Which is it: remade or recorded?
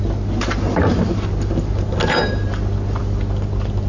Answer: recorded